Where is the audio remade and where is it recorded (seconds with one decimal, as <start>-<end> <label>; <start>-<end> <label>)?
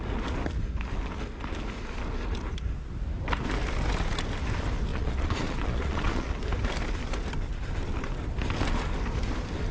0.0-4.9 recorded; 4.9-6.4 remade; 6.4-9.7 recorded